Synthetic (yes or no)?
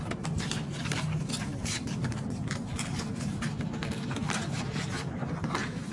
yes